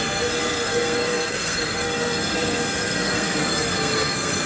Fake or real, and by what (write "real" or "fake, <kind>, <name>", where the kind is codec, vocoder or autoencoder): fake, codec, SNAC